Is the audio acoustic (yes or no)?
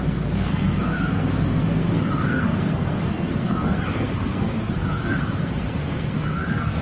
no